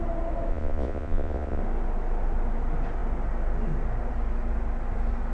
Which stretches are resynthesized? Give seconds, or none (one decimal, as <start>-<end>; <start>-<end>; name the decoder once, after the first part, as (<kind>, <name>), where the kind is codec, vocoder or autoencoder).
0.5-1.6 (vocoder, Vocos)

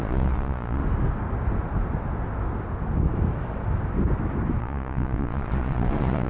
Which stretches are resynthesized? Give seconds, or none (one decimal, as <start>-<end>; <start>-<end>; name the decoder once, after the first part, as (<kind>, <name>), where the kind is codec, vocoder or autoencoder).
0.0-0.8 (vocoder, Vocos); 4.6-6.3

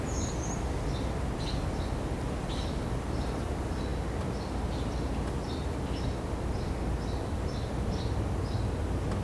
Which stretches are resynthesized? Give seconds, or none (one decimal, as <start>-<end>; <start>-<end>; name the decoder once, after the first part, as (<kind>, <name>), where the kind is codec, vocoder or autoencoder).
none

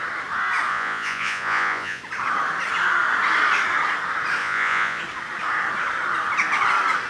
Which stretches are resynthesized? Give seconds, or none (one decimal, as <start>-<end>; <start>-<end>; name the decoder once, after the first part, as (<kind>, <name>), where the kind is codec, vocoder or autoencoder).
0.7-2.0 (vocoder, Vocos); 4.4-5.0

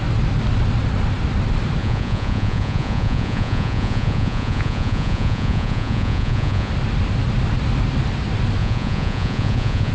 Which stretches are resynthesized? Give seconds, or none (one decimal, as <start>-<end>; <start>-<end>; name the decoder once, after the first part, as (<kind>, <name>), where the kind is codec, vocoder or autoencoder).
1.8-6.7 (vocoder, Vocos); 8.6-9.9

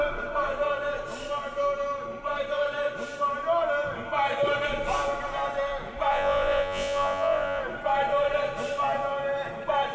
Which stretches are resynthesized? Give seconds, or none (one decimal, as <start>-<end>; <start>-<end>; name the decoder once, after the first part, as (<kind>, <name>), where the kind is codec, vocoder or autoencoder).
6.1-7.6 (vocoder, Vocos)